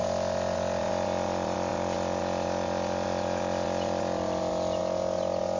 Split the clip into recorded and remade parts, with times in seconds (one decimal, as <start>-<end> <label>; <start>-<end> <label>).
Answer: 0.0-5.6 recorded